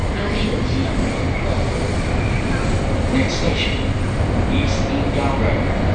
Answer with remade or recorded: recorded